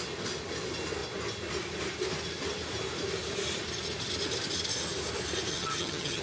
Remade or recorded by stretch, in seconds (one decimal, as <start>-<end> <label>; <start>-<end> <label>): 0.0-5.5 recorded; 5.5-6.2 remade